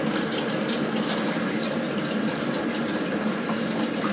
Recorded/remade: recorded